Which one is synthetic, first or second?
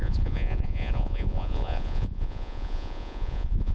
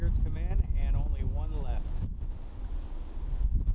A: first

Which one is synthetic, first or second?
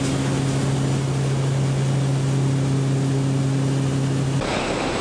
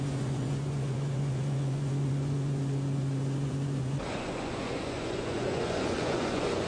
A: second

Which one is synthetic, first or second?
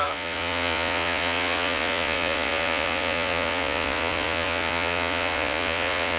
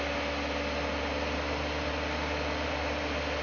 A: first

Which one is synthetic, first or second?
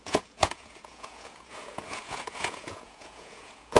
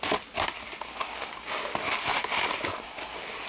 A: first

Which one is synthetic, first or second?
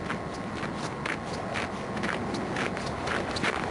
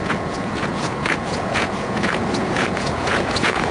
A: second